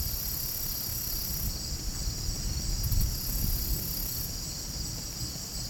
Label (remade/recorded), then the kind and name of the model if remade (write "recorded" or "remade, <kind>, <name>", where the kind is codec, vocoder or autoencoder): remade, vocoder, BigVGAN v2